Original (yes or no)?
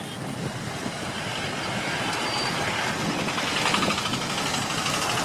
yes